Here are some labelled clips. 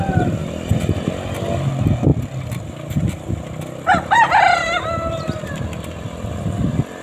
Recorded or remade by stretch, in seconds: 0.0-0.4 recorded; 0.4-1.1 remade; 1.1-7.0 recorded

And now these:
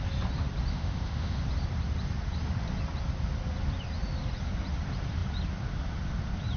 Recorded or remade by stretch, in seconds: 0.0-0.7 recorded; 0.7-1.4 remade; 1.4-6.6 recorded

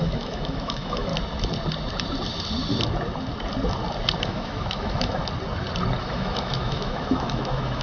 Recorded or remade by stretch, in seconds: 0.0-1.1 remade; 1.1-4.2 recorded; 4.2-5.2 remade; 5.2-6.0 recorded; 6.0-7.8 remade

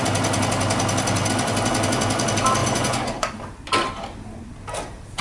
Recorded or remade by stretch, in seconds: 0.0-2.6 recorded; 2.6-3.3 remade; 3.3-5.2 recorded

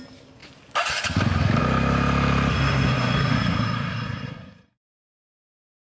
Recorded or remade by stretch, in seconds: 0.0-2.5 recorded; 2.5-5.2 remade; 5.2-6.0 recorded